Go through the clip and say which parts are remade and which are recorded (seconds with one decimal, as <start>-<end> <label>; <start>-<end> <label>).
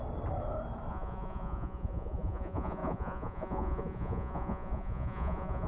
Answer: 0.0-0.9 recorded; 0.9-5.7 remade